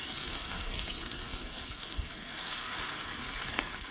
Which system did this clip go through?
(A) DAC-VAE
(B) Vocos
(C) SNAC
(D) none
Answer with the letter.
C